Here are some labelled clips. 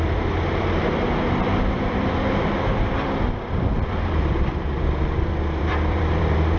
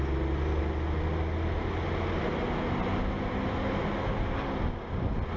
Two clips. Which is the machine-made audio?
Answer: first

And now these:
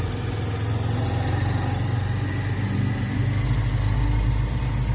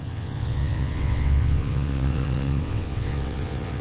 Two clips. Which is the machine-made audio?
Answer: second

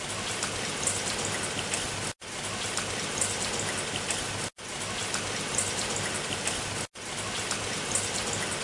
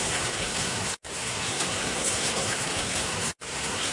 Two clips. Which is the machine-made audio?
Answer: second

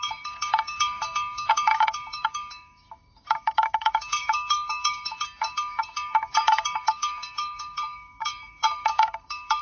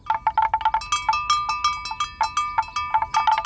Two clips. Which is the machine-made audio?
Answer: first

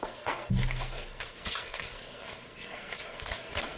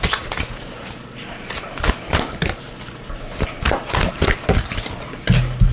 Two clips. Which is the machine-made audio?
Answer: first